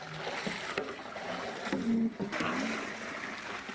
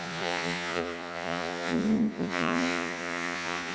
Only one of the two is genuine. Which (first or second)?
first